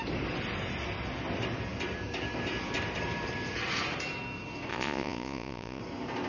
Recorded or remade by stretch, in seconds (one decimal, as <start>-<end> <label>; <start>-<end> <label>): 0.0-4.7 recorded; 4.7-5.8 remade; 5.8-6.3 recorded